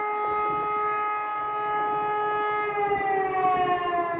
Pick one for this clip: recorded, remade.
recorded